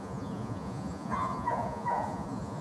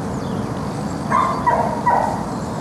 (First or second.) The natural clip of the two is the second